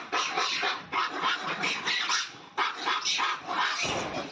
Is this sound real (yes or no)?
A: yes